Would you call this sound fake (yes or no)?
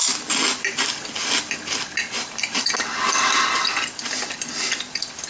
no